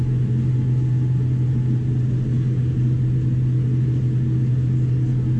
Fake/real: real